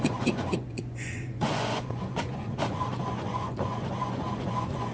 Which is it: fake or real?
fake